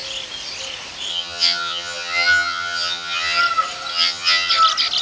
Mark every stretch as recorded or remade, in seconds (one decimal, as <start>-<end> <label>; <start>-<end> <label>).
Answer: 0.0-1.1 recorded; 1.1-3.4 remade; 3.4-3.9 recorded; 3.9-4.5 remade; 4.5-5.0 recorded

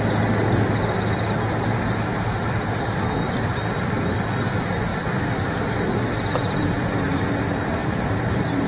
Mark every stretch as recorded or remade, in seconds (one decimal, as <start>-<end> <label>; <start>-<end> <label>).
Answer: 0.0-1.7 recorded; 1.7-3.0 remade; 3.0-4.9 recorded; 4.9-5.8 remade; 5.8-7.8 recorded; 7.8-8.7 remade

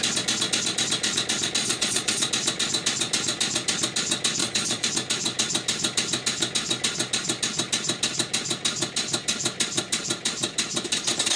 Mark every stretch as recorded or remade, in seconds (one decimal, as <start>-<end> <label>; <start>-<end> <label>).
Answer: 0.0-1.6 recorded; 1.6-2.3 remade; 2.3-4.4 recorded; 4.4-4.9 remade; 4.9-11.4 recorded

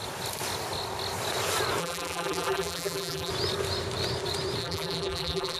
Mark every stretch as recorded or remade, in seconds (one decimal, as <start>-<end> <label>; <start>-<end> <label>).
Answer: 0.0-1.8 recorded; 1.8-3.3 remade; 3.3-4.6 recorded; 4.6-5.6 remade

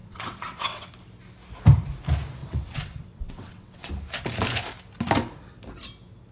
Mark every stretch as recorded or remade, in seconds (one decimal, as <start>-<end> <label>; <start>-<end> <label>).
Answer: 0.0-0.9 remade; 0.9-2.4 recorded; 2.4-3.9 remade; 3.9-6.3 recorded

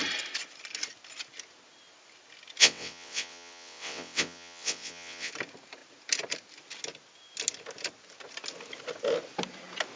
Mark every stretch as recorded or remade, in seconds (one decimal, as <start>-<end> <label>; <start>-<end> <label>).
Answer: 0.0-2.6 recorded; 2.6-5.3 remade; 5.3-10.0 recorded

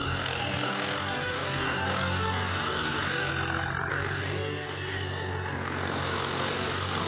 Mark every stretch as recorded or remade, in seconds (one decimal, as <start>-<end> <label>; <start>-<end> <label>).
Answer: 0.0-3.3 remade; 3.3-3.9 recorded; 3.9-7.1 remade

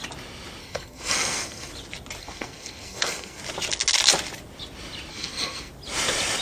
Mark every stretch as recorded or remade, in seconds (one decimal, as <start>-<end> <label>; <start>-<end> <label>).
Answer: 0.0-0.6 recorded; 0.6-1.7 remade; 1.7-2.2 recorded; 2.2-3.4 remade; 3.4-5.1 recorded; 5.1-5.7 remade; 5.7-6.4 recorded